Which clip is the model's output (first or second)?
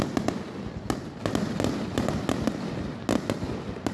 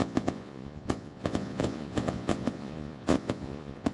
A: second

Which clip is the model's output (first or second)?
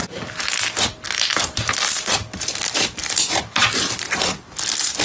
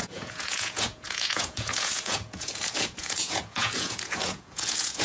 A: second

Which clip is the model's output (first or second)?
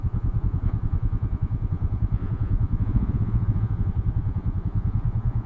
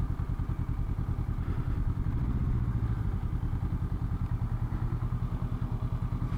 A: first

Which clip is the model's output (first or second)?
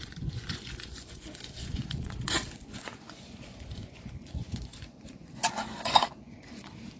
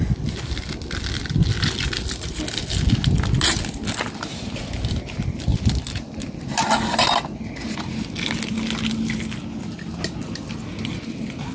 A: first